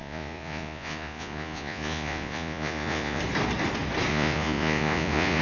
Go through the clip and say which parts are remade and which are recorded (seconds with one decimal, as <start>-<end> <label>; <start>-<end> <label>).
0.0-3.2 remade; 3.2-4.1 recorded; 4.1-5.4 remade